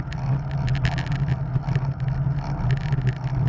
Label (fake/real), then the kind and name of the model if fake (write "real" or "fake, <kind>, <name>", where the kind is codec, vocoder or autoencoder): real